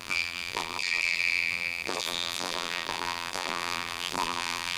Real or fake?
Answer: fake